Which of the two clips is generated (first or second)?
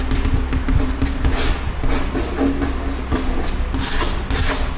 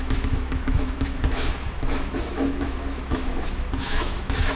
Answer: second